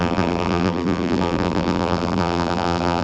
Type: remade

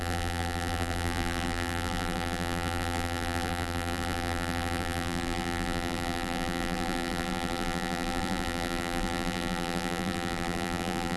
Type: remade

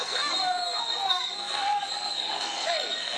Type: remade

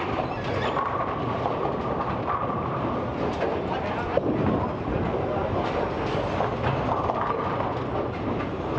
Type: recorded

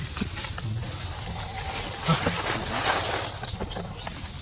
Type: recorded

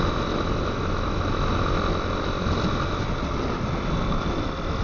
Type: recorded